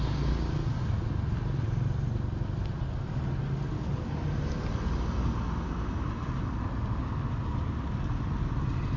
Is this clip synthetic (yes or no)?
no